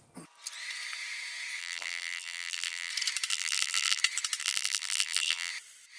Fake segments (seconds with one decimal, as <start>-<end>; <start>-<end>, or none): 1.6-2.9; 3.3-4.0; 4.4-5.5